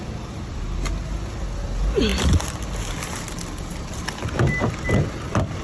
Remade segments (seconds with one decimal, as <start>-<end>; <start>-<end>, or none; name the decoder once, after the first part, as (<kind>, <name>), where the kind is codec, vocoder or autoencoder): none